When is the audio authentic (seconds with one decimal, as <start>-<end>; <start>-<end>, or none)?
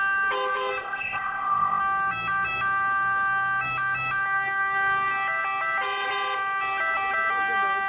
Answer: 0.0-0.8; 1.8-7.9